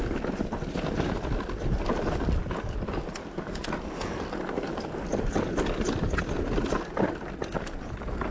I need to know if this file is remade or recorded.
recorded